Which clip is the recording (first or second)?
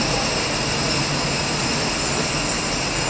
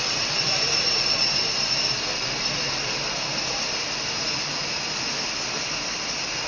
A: first